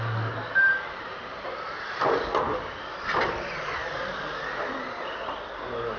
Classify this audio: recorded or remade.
recorded